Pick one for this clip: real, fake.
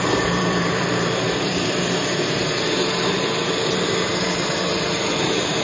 fake